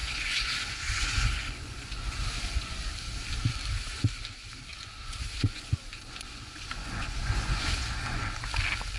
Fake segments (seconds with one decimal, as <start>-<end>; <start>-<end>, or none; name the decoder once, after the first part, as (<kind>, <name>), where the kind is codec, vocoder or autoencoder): 0.0-2.9 (vocoder, Vocos); 4.7-8.2